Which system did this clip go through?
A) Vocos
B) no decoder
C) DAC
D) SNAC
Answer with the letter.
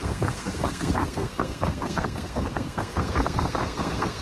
D